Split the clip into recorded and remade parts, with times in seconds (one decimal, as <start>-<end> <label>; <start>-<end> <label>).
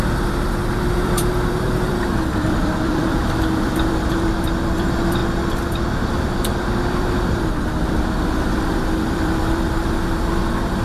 0.0-5.2 remade; 5.2-6.1 recorded; 6.1-10.8 remade